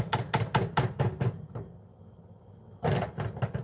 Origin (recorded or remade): recorded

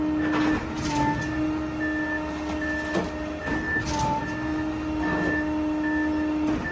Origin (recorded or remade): recorded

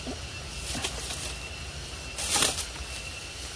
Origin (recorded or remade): recorded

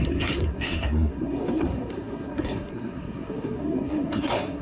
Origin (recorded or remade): remade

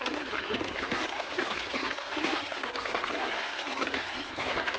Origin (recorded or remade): remade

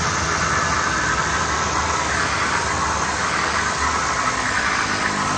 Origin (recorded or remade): recorded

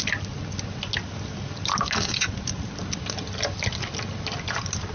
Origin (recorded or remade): recorded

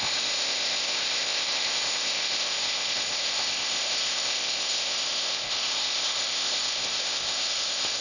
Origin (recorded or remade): remade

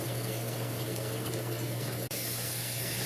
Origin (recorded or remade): remade